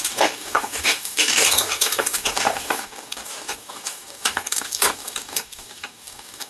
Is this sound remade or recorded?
remade